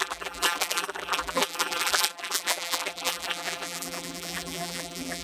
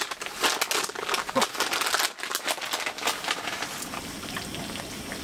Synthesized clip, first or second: first